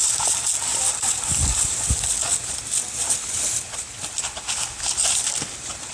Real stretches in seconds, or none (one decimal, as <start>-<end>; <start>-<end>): 0.0-5.9